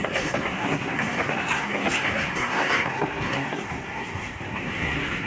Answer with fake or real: fake